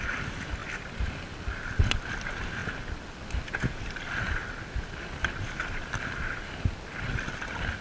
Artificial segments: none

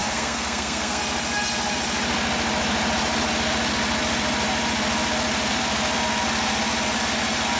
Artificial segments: 0.0-1.0 (codec, SNAC)